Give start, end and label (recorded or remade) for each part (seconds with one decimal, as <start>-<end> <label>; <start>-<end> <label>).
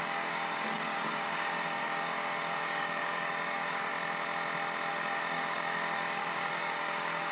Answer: 0.0-3.9 remade; 3.9-4.9 recorded; 4.9-7.3 remade